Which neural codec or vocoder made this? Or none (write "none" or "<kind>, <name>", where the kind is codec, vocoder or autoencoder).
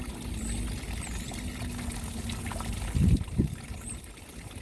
none